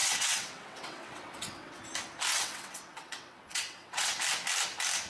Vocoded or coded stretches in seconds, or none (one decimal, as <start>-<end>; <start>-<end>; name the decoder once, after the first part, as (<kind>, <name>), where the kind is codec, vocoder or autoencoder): 0.0-1.8 (vocoder, WaveNeXt); 2.3-4.1